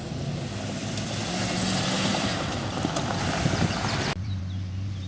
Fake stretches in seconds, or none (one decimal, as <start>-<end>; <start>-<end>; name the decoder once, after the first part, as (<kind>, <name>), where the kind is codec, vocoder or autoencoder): 0.8-1.5 (vocoder, BigVGAN v2); 2.1-4.4